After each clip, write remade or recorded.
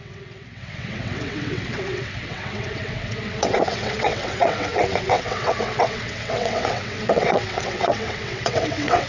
remade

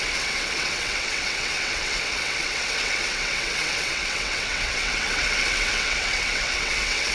remade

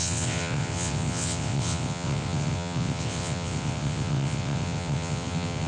remade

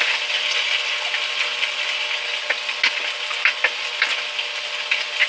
recorded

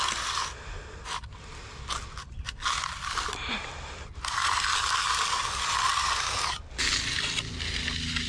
recorded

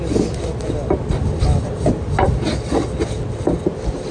recorded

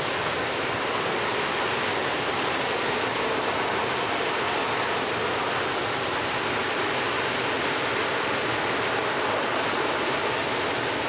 recorded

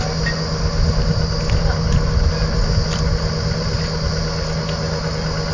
recorded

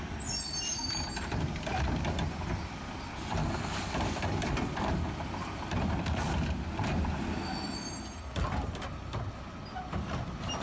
recorded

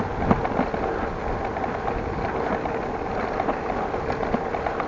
recorded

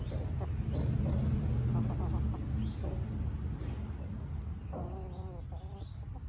recorded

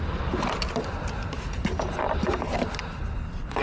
recorded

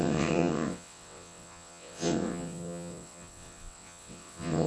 remade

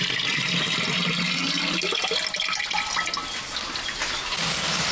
recorded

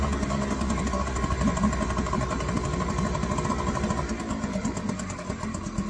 recorded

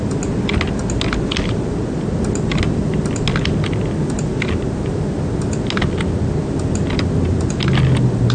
recorded